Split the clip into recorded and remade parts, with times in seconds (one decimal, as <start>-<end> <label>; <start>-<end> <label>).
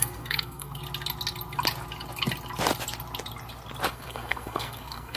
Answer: 0.0-0.8 remade; 0.8-3.9 recorded; 3.9-5.2 remade